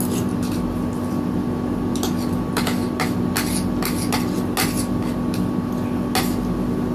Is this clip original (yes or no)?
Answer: yes